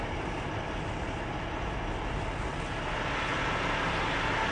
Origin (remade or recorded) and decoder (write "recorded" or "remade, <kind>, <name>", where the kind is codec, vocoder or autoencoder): recorded